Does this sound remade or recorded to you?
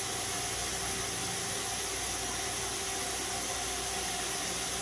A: recorded